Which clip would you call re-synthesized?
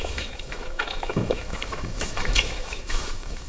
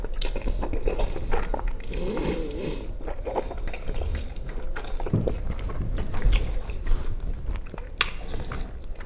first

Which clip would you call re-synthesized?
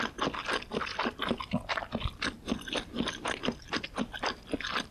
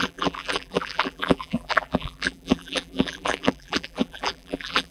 second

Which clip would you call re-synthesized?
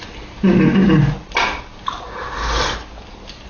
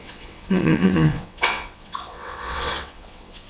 second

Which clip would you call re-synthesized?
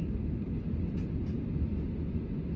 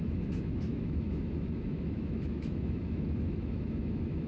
second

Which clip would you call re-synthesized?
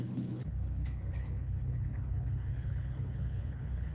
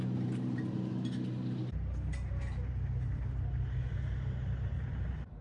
first